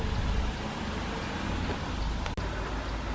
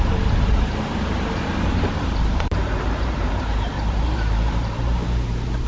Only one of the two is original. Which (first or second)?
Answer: first